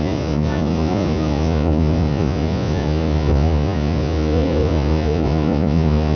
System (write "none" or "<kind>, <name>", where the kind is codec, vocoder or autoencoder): vocoder, Vocos